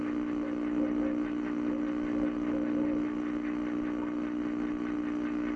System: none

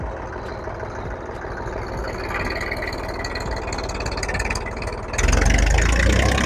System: none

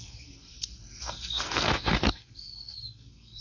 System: codec, SNAC